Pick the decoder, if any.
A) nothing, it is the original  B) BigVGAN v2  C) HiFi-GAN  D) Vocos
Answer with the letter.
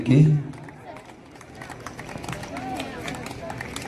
A